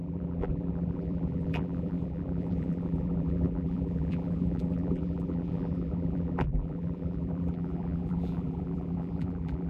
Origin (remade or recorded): remade